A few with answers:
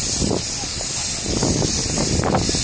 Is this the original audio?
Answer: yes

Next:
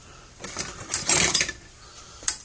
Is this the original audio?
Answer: no